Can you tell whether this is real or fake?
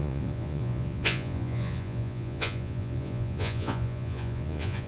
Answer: fake